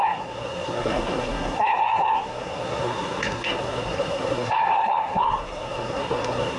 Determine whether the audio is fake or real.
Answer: fake